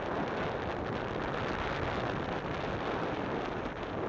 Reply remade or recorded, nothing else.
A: recorded